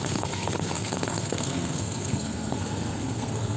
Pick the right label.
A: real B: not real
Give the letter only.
B